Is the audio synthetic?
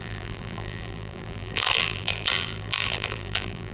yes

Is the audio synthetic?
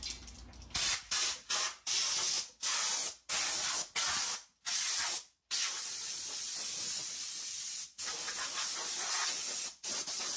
no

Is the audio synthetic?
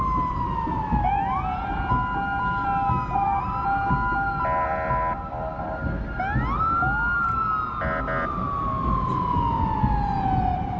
no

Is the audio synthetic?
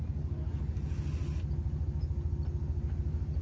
no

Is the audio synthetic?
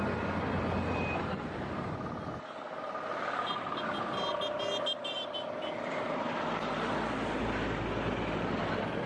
no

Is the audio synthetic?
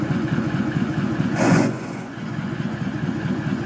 yes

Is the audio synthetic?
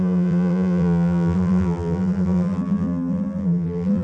yes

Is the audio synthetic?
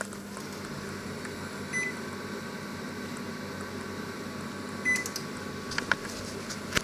no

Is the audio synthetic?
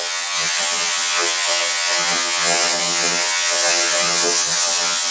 yes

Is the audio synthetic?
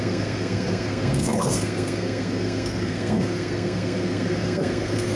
yes